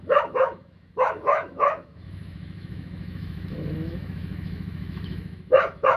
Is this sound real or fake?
fake